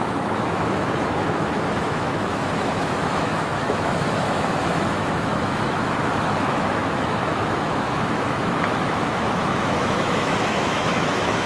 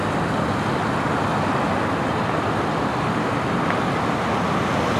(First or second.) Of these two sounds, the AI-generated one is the first